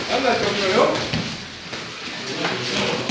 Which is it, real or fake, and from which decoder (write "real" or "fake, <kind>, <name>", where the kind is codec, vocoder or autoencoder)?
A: real